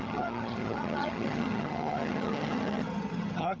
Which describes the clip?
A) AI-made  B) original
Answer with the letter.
A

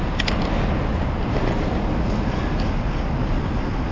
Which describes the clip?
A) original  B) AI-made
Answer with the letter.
A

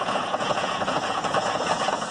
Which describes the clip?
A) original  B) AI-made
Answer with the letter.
B